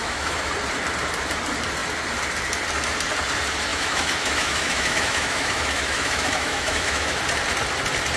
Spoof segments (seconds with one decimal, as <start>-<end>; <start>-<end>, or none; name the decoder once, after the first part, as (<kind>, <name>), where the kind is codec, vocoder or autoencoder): 0.0-0.5 (autoencoder, DAC-VAE); 3.7-7.2